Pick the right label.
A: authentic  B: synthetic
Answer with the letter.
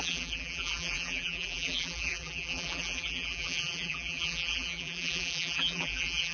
B